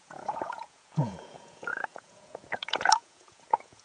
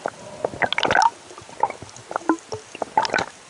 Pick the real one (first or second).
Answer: second